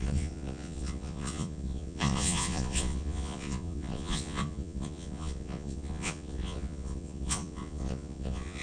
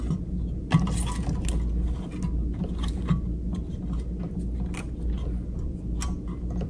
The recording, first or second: second